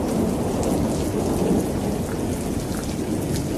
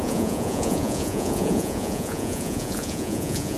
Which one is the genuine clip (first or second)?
first